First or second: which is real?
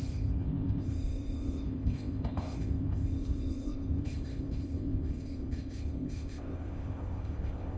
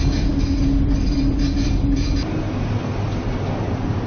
second